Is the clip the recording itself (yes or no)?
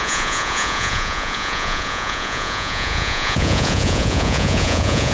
no